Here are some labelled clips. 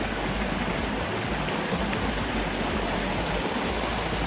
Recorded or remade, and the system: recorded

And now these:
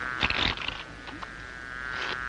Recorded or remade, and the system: recorded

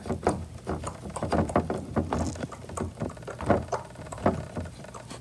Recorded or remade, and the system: recorded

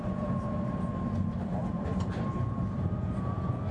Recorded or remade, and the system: remade, vocoder, BigVGAN v2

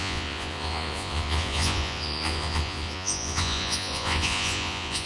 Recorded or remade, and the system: remade, vocoder, Vocos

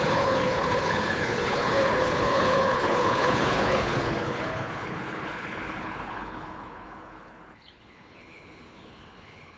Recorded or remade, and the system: remade, codec, HILCodec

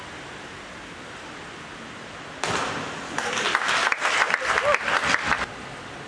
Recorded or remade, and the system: recorded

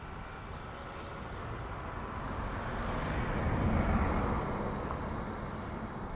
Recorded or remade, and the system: recorded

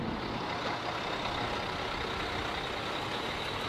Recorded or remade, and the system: recorded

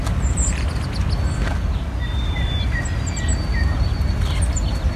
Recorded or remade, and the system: recorded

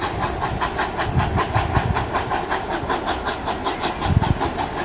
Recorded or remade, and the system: recorded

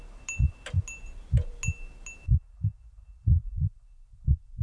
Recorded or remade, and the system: recorded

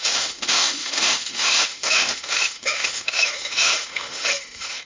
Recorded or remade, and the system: remade, autoencoder, DAC-VAE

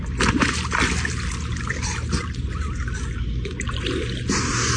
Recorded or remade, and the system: recorded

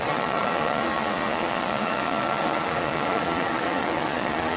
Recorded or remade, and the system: remade, vocoder, Vocos